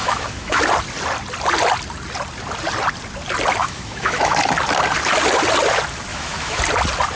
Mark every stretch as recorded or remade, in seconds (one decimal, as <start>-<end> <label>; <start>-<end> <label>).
0.0-0.6 remade; 0.6-3.6 recorded; 3.6-4.4 remade; 4.4-6.1 recorded; 6.1-6.6 remade; 6.6-7.2 recorded